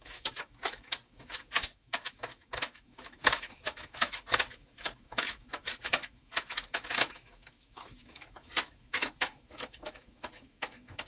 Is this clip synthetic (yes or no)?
yes